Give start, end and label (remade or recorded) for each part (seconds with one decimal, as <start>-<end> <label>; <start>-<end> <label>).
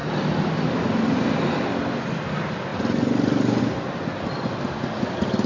0.0-5.5 recorded